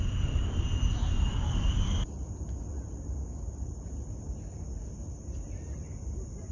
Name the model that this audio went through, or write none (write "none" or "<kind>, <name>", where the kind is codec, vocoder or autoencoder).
none